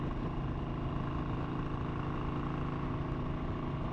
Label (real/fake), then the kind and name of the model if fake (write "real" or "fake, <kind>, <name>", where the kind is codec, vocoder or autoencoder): real